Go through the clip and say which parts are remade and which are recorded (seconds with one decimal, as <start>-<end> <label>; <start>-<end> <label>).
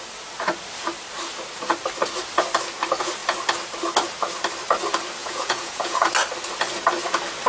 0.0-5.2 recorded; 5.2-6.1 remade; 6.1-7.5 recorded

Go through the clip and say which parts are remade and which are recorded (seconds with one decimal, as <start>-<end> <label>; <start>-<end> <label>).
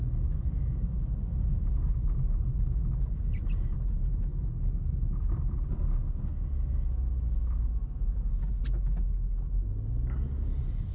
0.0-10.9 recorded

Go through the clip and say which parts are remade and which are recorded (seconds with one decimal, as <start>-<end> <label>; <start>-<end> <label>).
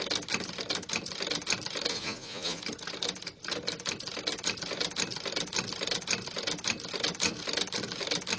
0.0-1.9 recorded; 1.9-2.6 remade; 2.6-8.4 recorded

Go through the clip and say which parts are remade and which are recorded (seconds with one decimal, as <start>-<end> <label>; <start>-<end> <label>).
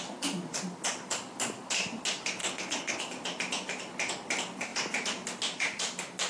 0.0-2.4 recorded; 2.4-3.0 remade; 3.0-6.3 recorded